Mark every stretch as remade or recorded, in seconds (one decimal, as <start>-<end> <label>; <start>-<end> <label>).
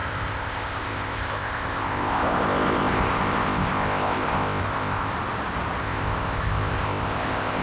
0.0-5.1 remade; 5.1-5.8 recorded; 5.8-7.6 remade